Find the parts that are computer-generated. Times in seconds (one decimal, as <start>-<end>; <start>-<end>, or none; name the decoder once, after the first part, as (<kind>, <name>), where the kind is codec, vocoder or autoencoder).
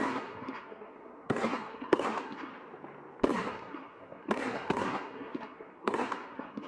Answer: 0.0-2.5 (codec, SNAC); 3.3-6.7